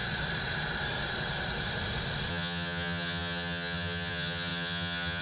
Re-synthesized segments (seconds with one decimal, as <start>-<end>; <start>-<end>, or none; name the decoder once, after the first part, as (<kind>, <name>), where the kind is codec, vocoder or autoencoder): 2.3-5.2 (vocoder, HiFi-GAN)